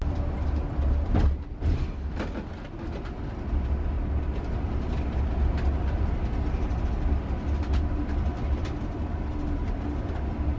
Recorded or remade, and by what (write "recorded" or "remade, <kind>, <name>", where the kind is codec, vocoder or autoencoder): recorded